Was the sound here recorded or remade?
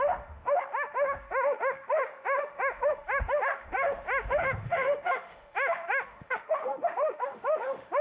remade